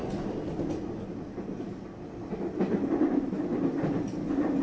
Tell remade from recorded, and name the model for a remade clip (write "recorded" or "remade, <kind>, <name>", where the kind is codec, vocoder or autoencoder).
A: recorded